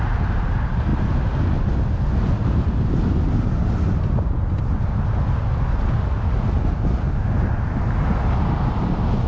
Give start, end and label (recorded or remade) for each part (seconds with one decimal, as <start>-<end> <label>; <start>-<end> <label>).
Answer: 0.0-9.3 recorded